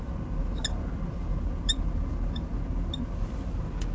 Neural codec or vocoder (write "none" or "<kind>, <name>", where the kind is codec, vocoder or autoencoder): none